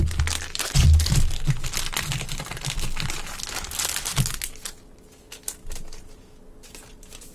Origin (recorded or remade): recorded